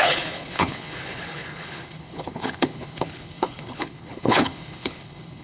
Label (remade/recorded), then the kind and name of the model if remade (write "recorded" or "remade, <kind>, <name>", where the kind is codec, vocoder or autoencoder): remade, codec, HILCodec